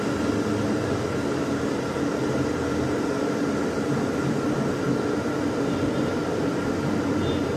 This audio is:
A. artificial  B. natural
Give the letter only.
B